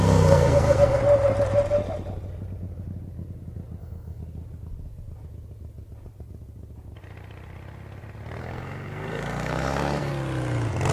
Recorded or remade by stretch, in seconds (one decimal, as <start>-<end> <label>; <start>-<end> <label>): 0.0-1.0 remade; 1.0-3.8 recorded; 3.8-4.2 remade; 4.2-8.4 recorded; 8.4-10.1 remade; 10.1-10.9 recorded